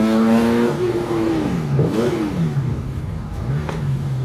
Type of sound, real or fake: fake